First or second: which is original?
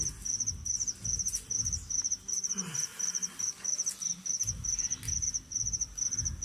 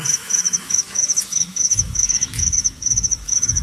first